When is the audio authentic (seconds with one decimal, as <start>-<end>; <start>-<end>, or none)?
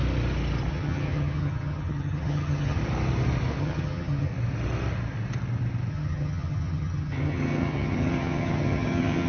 0.0-0.7; 2.8-3.6; 4.3-5.9